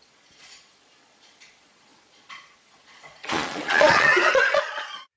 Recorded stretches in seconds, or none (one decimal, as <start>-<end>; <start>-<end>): none